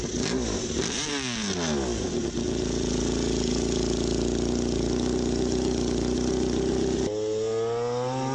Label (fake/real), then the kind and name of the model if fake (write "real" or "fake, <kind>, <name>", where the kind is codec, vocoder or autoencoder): real